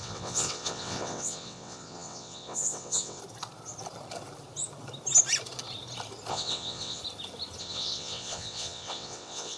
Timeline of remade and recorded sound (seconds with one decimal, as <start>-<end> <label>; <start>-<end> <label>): 0.0-3.2 remade; 3.2-6.3 recorded; 6.3-7.0 remade; 7.0-7.6 recorded; 7.6-9.6 remade